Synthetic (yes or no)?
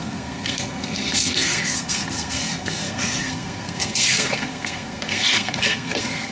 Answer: yes